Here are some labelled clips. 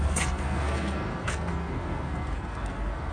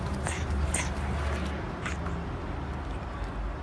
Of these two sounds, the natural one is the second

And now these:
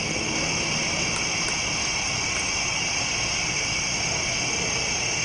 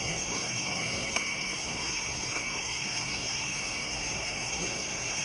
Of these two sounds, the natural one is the first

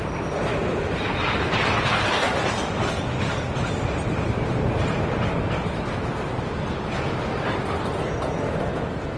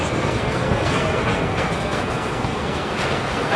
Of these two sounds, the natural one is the first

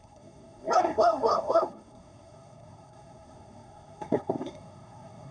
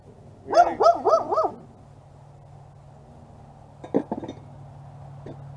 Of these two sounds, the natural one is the second